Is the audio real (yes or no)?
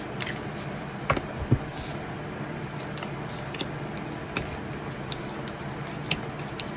yes